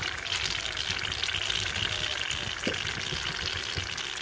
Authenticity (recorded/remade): recorded